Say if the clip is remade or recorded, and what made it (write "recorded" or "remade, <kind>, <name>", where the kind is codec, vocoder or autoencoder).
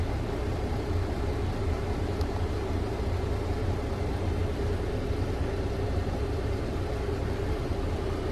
remade, vocoder, BigVGAN v2